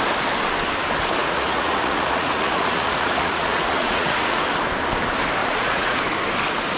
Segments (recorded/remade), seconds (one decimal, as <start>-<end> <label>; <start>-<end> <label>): 0.0-1.2 recorded; 1.2-4.4 remade; 4.4-5.4 recorded; 5.4-6.0 remade; 6.0-6.8 recorded